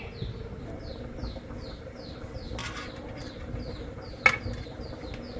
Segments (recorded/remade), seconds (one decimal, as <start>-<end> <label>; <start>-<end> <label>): 0.0-5.4 recorded